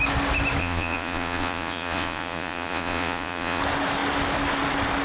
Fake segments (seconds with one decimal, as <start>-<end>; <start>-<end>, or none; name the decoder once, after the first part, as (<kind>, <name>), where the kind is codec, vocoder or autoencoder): 0.6-3.6 (vocoder, Vocos)